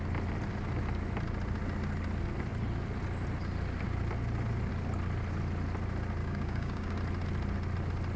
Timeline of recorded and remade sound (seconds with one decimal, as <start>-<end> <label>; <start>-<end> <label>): 0.0-6.2 recorded; 6.2-7.0 remade; 7.0-8.2 recorded